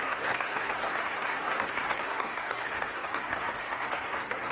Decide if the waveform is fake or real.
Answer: fake